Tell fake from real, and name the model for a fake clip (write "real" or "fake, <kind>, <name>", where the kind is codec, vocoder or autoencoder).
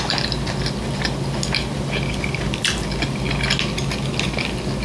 real